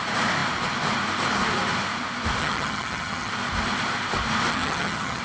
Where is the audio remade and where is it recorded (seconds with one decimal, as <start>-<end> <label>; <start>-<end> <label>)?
0.0-2.4 recorded; 2.4-3.3 remade; 3.3-4.5 recorded; 4.5-5.2 remade